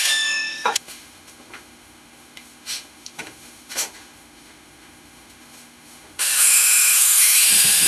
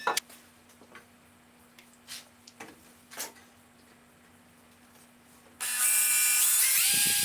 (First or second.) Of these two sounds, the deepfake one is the first